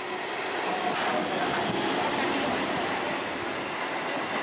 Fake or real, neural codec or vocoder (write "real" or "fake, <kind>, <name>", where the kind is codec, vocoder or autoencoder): real